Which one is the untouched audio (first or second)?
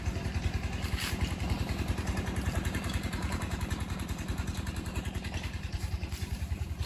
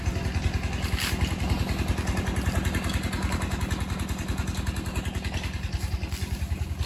second